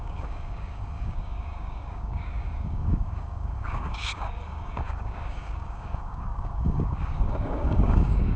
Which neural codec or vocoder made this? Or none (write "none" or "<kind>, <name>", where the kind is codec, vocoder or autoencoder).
codec, DAC